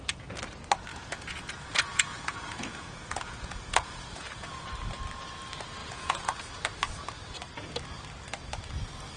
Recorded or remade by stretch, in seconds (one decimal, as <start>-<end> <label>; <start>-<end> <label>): 0.0-0.9 recorded; 0.9-4.7 remade; 4.7-5.8 recorded; 5.8-6.4 remade; 6.4-9.2 recorded